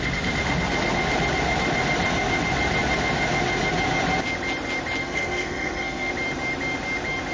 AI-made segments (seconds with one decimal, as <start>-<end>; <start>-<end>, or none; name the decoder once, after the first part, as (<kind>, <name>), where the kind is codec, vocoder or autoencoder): 5.0-6.1 (codec, SNAC)